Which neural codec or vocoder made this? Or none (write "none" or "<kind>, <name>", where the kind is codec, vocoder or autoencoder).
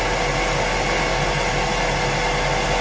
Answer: none